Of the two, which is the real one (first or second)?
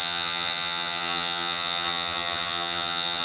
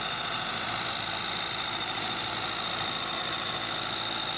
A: second